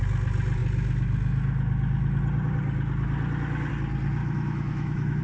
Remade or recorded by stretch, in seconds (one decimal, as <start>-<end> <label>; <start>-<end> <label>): 0.0-4.2 recorded; 4.2-5.2 remade